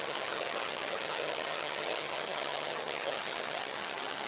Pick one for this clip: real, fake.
fake